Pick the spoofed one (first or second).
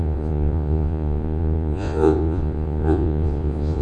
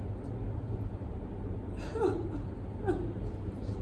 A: first